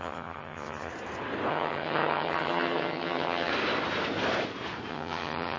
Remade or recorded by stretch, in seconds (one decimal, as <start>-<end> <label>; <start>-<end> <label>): 0.0-0.9 remade; 0.9-1.5 recorded; 1.5-3.5 remade; 3.5-4.9 recorded; 4.9-5.6 remade